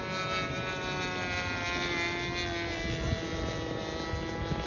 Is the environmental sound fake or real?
real